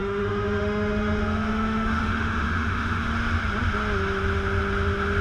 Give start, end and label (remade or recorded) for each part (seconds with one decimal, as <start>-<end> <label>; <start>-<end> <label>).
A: 0.0-3.1 remade; 3.1-5.2 recorded